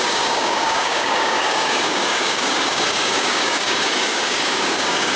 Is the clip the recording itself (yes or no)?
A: no